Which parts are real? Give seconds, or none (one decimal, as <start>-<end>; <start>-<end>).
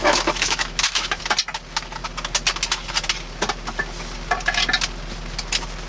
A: 1.2-5.9